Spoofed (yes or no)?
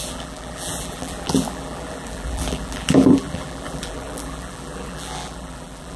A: yes